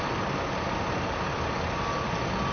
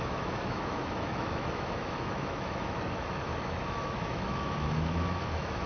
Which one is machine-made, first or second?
second